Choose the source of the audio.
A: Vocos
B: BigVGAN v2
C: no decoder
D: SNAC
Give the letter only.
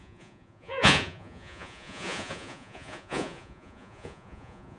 A